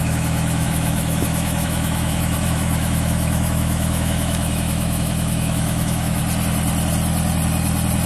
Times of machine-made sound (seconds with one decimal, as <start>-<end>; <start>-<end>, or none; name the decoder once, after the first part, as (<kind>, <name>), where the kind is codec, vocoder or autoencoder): 0.0-6.2 (autoencoder, DAC-VAE)